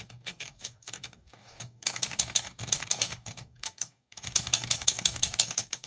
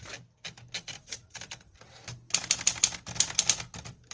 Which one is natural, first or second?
second